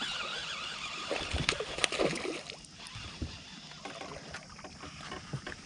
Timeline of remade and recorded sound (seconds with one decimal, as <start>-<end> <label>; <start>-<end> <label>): 0.0-5.7 recorded